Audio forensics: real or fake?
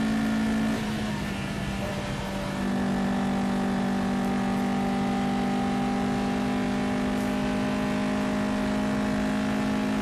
real